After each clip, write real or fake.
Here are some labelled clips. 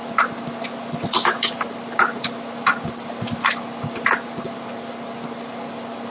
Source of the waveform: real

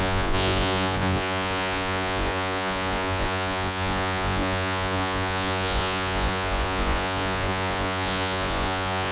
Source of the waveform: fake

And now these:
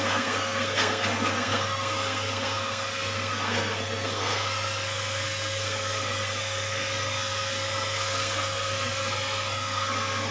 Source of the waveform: fake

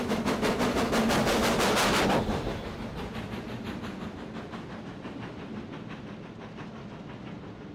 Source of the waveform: real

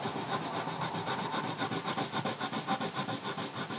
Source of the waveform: real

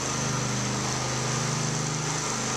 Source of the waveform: real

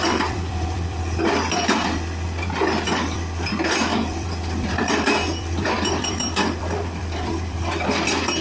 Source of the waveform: fake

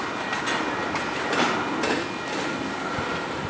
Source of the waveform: real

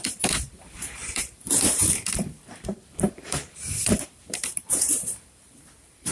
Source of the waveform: fake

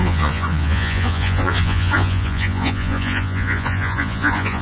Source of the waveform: fake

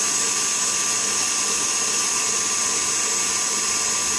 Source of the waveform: real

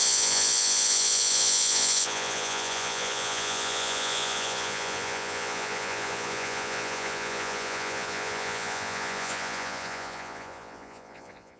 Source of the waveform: fake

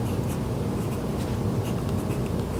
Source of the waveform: real